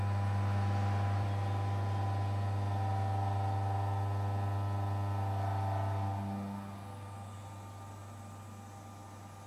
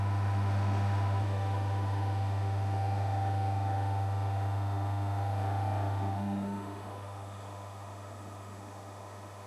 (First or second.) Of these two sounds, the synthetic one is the second